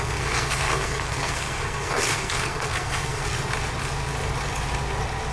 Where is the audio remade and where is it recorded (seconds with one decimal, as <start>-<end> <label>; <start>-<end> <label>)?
0.0-3.3 remade; 3.3-5.3 recorded